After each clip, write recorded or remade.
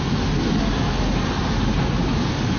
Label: recorded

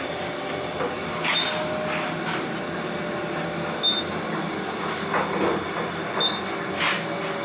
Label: recorded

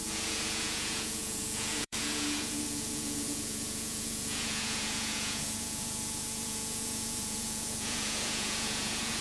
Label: remade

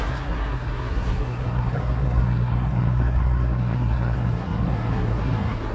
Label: remade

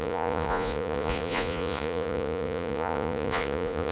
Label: remade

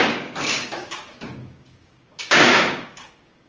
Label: remade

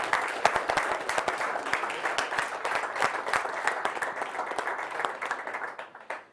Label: recorded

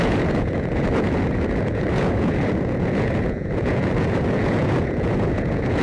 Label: remade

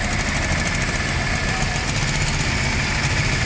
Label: recorded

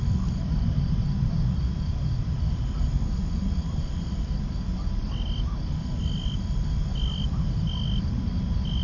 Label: recorded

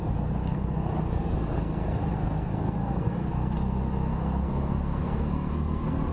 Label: remade